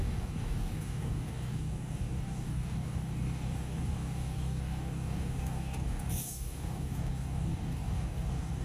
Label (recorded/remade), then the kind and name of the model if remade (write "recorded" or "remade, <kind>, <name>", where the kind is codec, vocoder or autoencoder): remade, codec, DAC